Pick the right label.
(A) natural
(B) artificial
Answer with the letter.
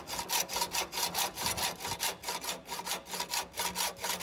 A